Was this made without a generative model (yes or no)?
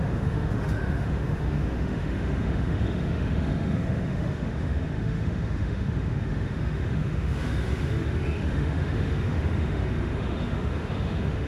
no